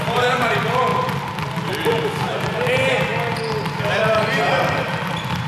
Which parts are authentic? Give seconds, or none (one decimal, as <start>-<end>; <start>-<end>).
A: 0.0-5.5